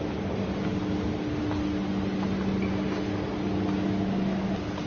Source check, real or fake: real